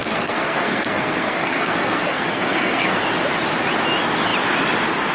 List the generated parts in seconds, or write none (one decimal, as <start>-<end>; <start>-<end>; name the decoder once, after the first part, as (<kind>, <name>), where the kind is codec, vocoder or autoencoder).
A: 0.0-3.0 (codec, SNAC)